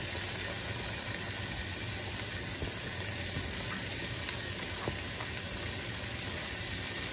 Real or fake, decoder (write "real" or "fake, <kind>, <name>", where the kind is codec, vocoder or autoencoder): real